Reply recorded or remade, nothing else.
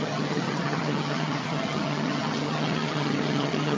remade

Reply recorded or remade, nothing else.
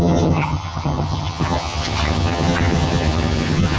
remade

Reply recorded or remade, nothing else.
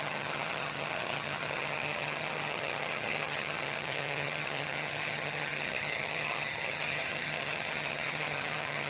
remade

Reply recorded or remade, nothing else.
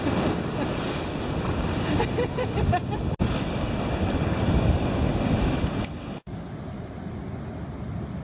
recorded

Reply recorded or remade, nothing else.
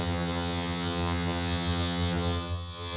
remade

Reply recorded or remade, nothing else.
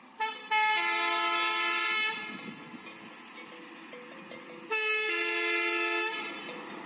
recorded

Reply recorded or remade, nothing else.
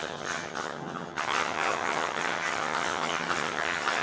remade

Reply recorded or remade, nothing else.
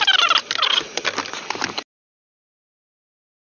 recorded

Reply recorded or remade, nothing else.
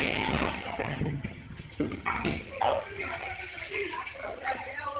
remade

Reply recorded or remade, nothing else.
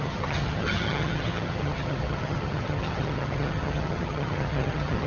remade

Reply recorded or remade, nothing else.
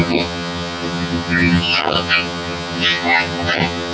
remade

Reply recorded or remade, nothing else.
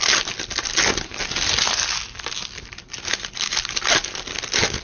recorded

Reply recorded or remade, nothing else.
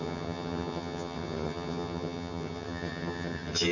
remade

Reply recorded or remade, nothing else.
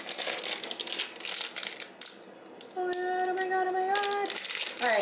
recorded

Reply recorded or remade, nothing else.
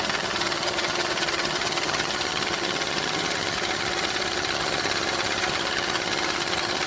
remade